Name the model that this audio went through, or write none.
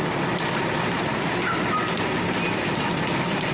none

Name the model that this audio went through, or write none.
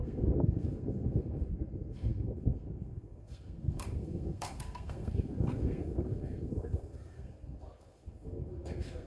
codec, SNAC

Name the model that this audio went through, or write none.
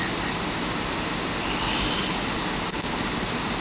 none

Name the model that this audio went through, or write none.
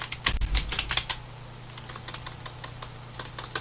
none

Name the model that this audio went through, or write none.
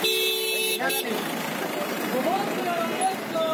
none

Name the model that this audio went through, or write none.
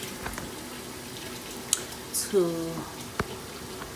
none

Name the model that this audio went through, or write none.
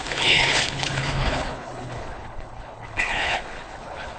codec, HILCodec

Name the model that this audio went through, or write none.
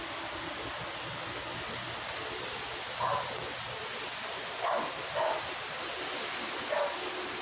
none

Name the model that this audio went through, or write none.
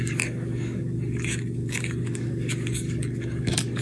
codec, DAC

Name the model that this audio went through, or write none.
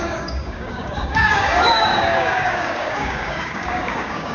codec, DAC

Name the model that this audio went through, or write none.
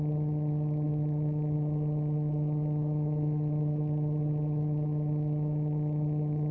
autoencoder, DAC-VAE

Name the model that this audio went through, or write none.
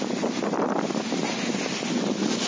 none